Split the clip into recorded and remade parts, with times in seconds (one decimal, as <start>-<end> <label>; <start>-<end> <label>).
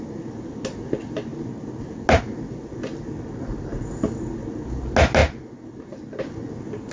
0.0-6.9 recorded